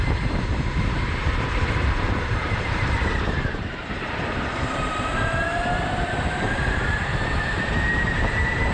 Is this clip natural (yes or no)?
no